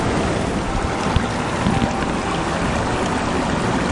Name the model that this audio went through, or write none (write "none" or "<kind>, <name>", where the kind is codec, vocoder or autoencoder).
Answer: none